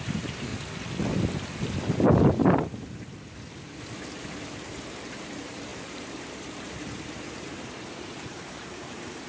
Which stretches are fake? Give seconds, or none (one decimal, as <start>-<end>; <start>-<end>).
0.0-0.5; 4.4-9.3

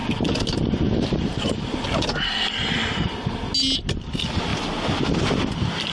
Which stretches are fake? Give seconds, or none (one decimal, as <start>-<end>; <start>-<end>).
none